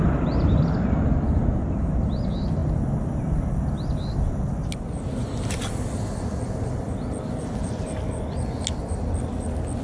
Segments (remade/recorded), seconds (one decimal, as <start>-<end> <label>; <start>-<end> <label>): 0.0-9.8 recorded